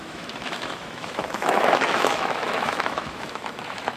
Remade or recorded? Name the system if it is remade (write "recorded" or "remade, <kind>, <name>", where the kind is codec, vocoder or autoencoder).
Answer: remade, autoencoder, DAC-VAE